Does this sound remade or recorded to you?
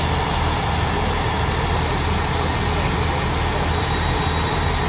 recorded